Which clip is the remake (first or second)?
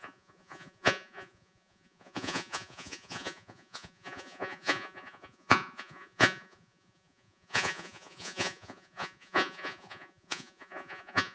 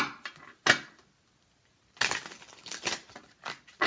first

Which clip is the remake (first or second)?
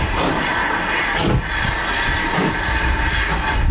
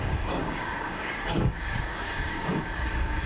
second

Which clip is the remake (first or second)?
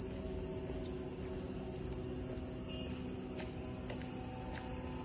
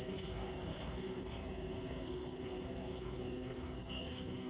second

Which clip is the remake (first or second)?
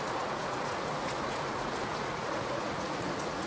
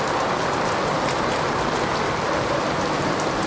first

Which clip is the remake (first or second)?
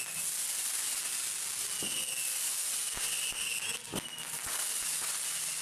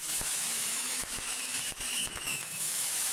second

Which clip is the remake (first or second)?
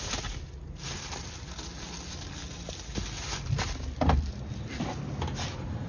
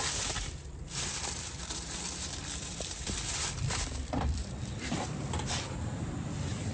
second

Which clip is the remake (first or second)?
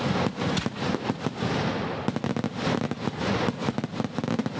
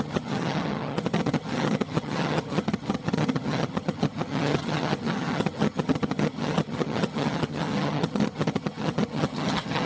second